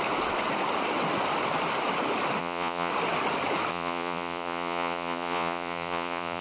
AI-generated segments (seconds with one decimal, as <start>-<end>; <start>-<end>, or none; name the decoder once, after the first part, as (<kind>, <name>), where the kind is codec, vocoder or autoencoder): 2.4-2.9 (vocoder, Vocos); 3.7-6.4

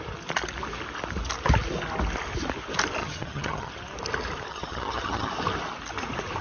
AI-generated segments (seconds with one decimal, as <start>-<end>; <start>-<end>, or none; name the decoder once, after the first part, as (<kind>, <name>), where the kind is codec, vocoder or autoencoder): 3.0-3.7 (vocoder, HiFi-GAN); 4.5-5.3

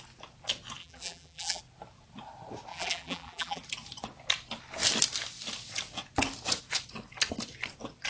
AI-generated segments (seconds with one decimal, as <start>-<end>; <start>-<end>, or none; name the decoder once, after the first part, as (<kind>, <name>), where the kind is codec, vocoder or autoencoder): 0.8-1.6 (vocoder, BigVGAN v2); 2.7-3.6

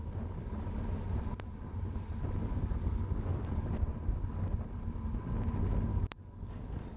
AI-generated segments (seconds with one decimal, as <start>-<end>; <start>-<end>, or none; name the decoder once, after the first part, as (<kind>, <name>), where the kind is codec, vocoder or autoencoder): 2.4-3.7 (codec, DAC); 5.9-7.0

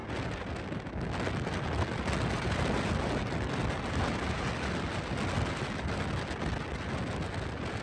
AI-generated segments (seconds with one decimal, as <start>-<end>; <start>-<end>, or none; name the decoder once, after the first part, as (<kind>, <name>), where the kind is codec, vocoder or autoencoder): none

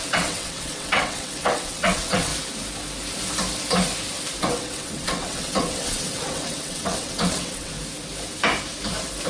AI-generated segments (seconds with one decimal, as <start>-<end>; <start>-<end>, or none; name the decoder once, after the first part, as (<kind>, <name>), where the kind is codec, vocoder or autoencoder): 0.0-2.3 (vocoder, WaveNeXt); 4.4-7.7

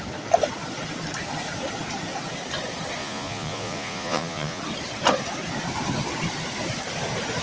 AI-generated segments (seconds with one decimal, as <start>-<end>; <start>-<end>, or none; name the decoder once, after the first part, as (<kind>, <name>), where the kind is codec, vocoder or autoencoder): 3.0-4.6 (vocoder, Vocos)

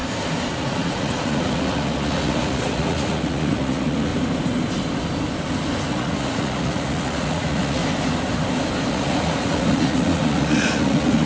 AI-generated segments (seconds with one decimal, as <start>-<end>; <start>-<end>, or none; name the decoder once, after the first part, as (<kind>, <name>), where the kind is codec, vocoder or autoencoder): 0.5-4.1 (vocoder, Vocos); 5.9-7.8; 8.9-11.3